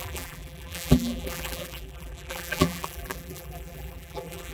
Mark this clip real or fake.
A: fake